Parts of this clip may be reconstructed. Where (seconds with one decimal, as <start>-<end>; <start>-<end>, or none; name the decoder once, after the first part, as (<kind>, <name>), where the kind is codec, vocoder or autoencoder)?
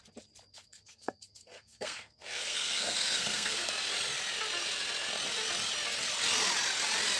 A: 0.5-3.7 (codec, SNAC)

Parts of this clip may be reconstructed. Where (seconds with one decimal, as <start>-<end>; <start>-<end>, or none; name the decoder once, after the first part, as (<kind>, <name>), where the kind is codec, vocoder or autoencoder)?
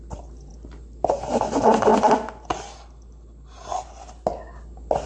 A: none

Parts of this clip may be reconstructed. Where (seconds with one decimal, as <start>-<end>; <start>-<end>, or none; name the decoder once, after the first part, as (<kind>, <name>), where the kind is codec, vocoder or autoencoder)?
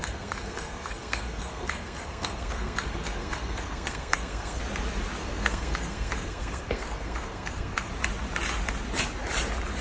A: 0.0-4.6 (codec, SNAC); 5.2-7.9